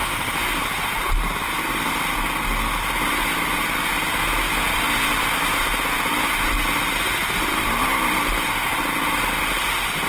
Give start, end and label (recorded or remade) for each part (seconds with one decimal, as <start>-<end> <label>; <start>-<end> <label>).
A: 0.0-10.1 recorded